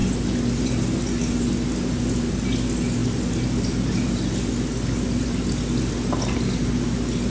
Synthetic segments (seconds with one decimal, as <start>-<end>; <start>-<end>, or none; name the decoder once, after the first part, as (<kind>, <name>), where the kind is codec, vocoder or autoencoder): none